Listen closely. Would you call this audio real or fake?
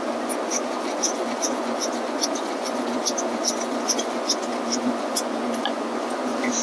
fake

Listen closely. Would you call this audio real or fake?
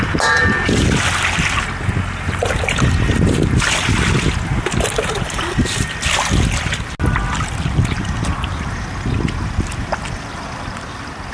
real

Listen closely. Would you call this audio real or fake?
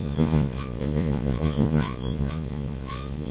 fake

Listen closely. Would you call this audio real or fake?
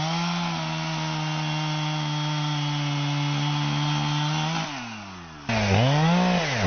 real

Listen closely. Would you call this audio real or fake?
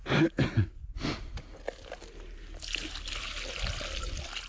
real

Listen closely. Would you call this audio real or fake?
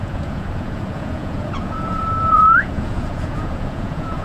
fake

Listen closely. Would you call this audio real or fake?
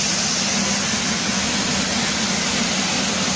real